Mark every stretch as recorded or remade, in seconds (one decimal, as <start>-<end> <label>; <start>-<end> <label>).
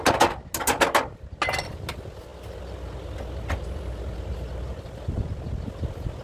0.0-6.2 recorded